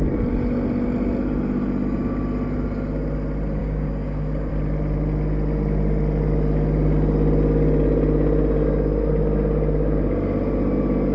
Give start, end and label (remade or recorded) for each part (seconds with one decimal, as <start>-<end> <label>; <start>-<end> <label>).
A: 0.0-3.6 recorded; 3.6-4.5 remade; 4.5-11.1 recorded